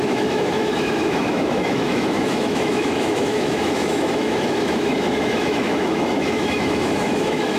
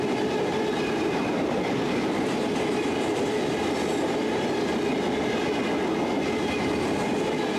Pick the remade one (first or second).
first